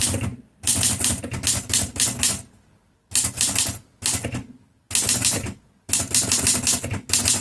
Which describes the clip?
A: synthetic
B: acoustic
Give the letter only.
B